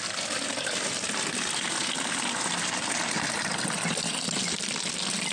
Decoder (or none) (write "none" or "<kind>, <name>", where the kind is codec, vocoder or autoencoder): none